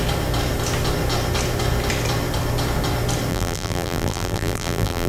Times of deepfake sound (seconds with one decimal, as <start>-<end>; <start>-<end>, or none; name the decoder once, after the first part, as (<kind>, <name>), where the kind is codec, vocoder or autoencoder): 3.3-5.1 (vocoder, BigVGAN v2)